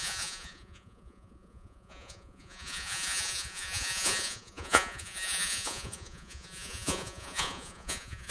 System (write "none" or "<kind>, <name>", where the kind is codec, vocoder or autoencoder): vocoder, Vocos